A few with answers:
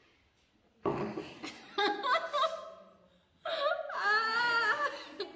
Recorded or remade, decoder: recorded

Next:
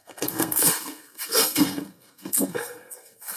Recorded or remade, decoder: remade, codec, SNAC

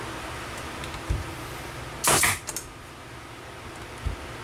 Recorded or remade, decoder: recorded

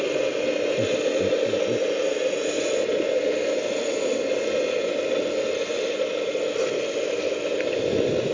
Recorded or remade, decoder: recorded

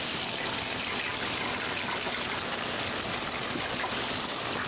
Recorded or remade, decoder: recorded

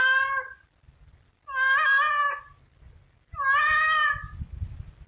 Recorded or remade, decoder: recorded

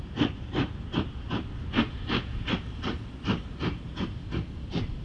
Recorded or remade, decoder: remade, vocoder, BigVGAN v2